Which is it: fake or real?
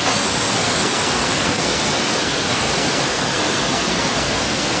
fake